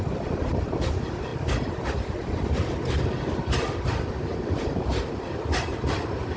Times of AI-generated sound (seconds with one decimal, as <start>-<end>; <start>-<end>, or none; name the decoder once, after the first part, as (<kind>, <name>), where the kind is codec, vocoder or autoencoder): none